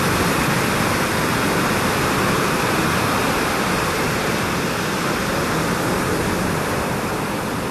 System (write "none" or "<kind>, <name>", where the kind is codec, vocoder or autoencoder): none